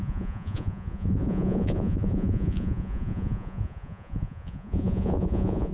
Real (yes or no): no